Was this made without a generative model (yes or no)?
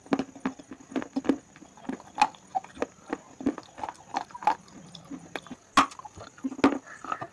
yes